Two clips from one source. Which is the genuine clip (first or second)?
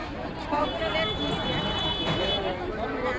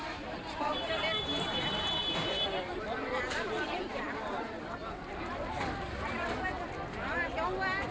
first